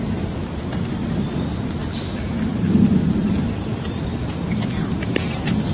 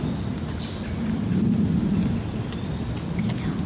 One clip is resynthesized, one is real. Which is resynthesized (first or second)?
first